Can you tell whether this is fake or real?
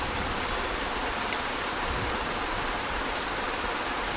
real